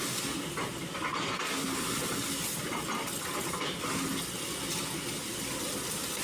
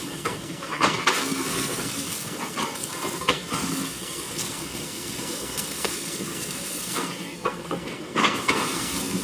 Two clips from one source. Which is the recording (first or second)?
first